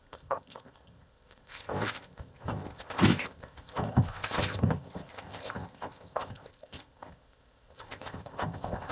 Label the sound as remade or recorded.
remade